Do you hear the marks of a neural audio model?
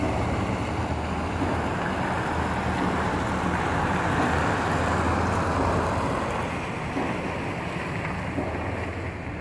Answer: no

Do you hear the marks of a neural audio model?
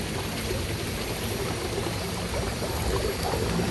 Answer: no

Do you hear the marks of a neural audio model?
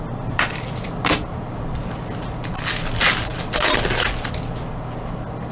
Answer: no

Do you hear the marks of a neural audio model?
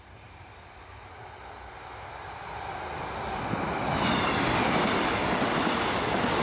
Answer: no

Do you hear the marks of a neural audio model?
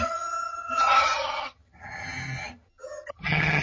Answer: yes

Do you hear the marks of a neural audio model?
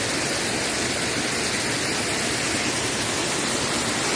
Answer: no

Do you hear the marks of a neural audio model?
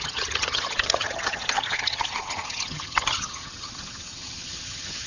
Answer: yes